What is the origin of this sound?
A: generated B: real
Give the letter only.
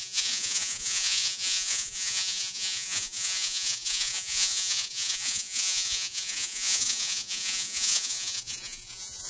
A